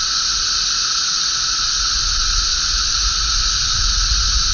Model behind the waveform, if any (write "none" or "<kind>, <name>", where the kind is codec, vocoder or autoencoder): vocoder, Vocos